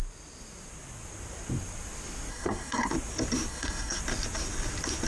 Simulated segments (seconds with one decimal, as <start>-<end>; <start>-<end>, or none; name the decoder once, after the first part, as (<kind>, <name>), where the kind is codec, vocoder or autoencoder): 2.3-2.9 (codec, SNAC); 3.5-4.0